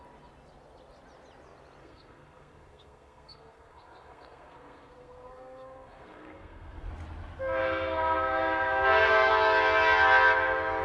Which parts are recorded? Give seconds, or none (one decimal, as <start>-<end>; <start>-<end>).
0.0-1.8; 6.9-7.6; 9.3-10.8